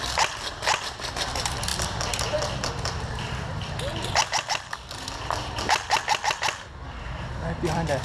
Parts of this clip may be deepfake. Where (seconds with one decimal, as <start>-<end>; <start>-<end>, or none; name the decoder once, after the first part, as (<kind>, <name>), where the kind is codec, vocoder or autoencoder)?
0.0-3.9 (vocoder, BigVGAN v2); 6.8-8.0